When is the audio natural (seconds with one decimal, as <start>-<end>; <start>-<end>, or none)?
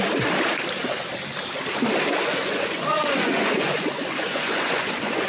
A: 0.0-2.1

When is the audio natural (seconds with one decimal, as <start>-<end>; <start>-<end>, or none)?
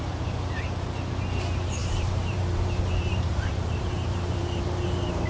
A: 0.0-1.8